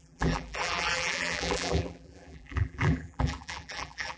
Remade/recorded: remade